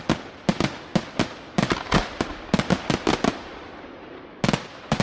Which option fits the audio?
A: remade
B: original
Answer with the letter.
B